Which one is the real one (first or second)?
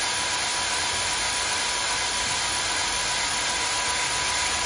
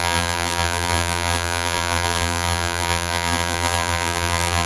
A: first